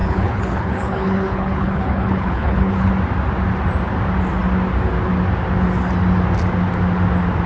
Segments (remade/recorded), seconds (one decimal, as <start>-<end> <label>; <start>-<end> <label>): 0.0-2.9 remade; 2.9-7.5 recorded